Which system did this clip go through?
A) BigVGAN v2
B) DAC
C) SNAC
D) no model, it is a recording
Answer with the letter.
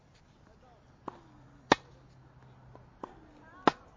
D